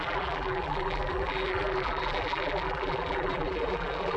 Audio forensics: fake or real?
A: fake